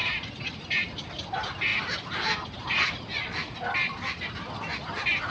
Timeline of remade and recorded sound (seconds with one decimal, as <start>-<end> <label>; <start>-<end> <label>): 0.0-5.3 recorded